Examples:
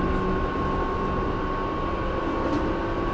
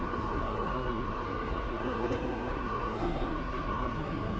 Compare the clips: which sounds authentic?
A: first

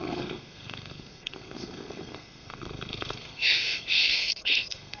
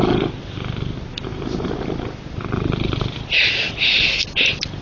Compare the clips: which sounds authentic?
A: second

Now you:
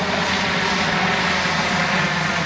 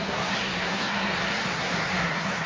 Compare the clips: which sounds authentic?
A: first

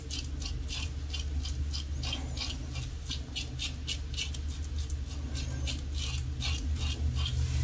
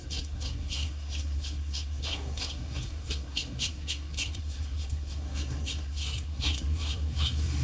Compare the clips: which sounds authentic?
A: first